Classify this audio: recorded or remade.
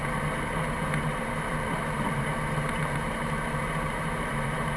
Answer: remade